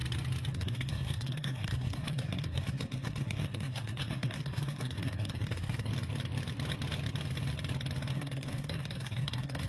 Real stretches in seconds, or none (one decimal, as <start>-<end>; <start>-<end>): 0.0-0.5; 5.9-8.1